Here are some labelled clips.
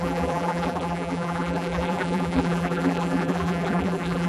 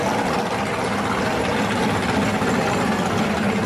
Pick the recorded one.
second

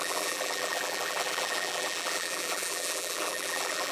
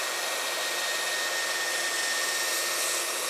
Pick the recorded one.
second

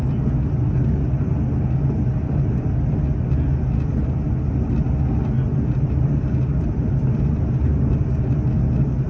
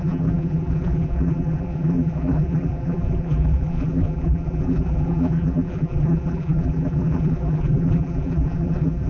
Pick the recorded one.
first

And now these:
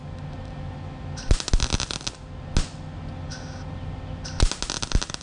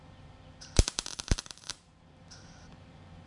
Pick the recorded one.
first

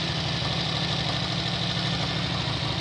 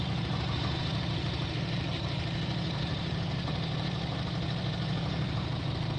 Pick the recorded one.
first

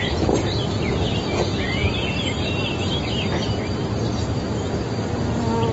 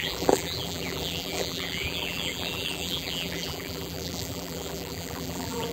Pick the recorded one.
first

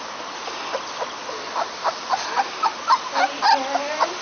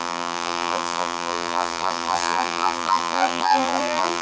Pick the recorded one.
first